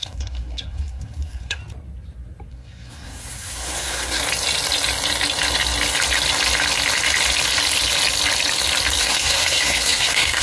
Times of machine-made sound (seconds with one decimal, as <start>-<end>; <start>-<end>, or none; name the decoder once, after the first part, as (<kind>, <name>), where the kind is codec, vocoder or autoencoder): 0.0-1.6 (codec, SNAC); 2.5-4.2; 9.0-10.4